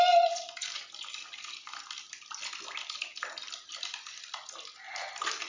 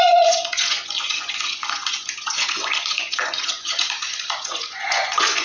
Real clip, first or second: first